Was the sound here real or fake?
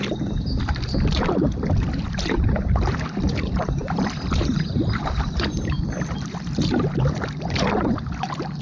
fake